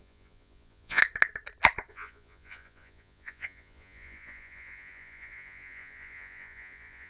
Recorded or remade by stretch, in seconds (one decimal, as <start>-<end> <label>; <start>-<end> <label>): 0.0-1.0 remade; 1.0-1.9 recorded; 1.9-7.1 remade

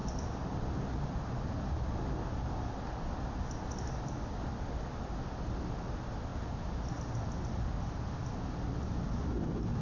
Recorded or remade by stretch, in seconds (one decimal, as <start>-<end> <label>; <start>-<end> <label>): 0.0-9.8 recorded

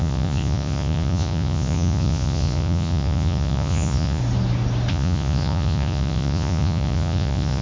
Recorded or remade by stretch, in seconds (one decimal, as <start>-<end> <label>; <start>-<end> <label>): 0.0-4.2 remade; 4.2-4.9 recorded; 4.9-7.6 remade

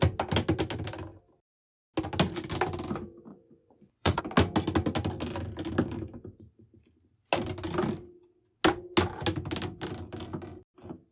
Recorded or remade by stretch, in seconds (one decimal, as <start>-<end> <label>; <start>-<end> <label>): 0.0-3.3 recorded; 3.3-4.2 remade; 4.2-11.1 recorded

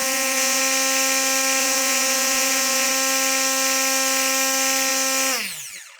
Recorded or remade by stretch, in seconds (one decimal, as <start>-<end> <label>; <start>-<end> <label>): 0.0-0.6 remade; 0.6-1.6 recorded; 1.6-2.9 remade; 2.9-6.0 recorded

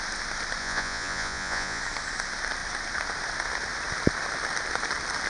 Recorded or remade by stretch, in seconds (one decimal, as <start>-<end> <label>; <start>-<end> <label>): 0.0-0.6 recorded; 0.6-1.8 remade; 1.8-5.3 recorded

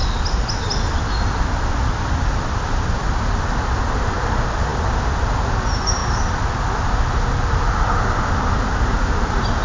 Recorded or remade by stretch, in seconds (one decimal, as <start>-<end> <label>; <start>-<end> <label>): 0.0-9.6 recorded

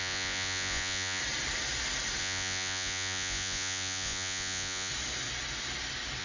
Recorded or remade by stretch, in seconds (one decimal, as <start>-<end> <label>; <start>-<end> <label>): 0.0-1.2 remade; 1.2-2.2 recorded; 2.2-4.9 remade; 4.9-6.2 recorded